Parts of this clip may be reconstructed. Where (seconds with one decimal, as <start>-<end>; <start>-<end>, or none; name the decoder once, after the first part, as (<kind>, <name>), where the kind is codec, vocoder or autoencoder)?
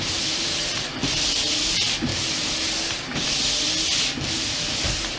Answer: 0.0-2.1 (vocoder, BigVGAN v2); 4.8-5.2